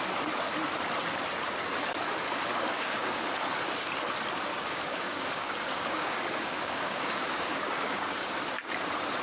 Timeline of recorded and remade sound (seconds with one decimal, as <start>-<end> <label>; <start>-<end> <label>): 0.0-2.5 recorded; 2.5-3.3 remade; 3.3-4.5 recorded; 4.5-8.3 remade; 8.3-9.2 recorded